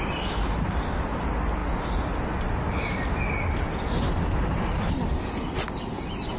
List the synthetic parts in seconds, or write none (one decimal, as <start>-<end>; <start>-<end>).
none